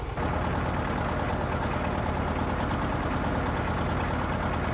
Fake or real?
real